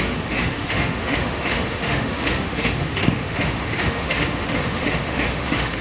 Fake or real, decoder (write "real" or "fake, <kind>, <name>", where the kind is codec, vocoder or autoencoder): fake, autoencoder, DAC-VAE